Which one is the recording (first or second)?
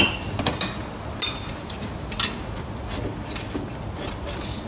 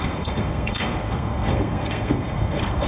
first